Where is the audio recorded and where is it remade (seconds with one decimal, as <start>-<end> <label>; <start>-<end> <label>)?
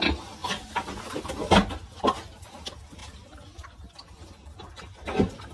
0.0-0.4 recorded; 0.4-1.0 remade; 1.0-3.0 recorded; 3.0-4.9 remade; 4.9-5.5 recorded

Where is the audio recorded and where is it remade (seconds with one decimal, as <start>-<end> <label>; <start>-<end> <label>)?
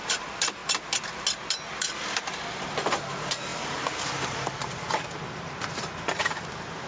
0.0-0.6 remade; 0.6-2.5 recorded; 2.5-4.6 remade; 4.6-6.2 recorded; 6.2-6.9 remade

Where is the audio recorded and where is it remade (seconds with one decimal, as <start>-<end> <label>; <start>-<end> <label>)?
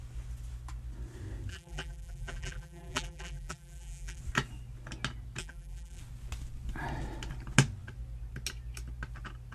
0.0-1.5 recorded; 1.5-4.2 remade; 4.2-5.4 recorded; 5.4-6.0 remade; 6.0-9.5 recorded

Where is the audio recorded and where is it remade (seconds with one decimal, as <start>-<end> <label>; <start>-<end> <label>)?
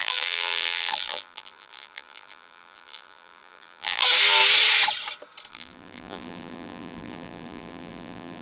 0.0-4.0 remade; 4.0-5.5 recorded; 5.5-8.4 remade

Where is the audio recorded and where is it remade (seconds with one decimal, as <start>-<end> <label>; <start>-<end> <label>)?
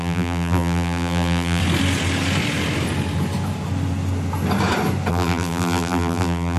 0.0-1.6 remade; 1.6-5.1 recorded; 5.1-6.6 remade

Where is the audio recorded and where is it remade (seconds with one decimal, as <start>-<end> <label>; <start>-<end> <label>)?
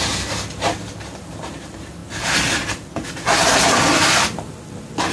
0.0-2.0 remade; 2.0-5.1 recorded